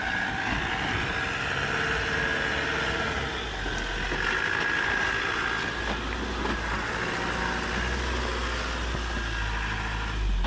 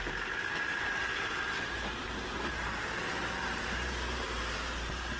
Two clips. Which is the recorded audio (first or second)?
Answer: first